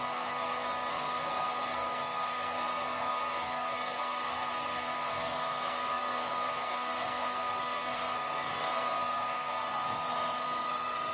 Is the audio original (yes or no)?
no